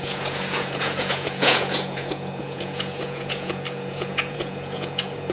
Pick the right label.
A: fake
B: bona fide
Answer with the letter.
A